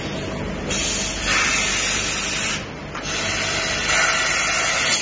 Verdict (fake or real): real